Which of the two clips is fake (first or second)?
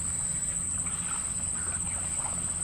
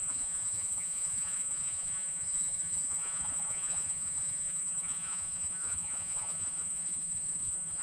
second